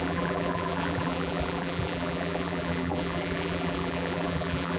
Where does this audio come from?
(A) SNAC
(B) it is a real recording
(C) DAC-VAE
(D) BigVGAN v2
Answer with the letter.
D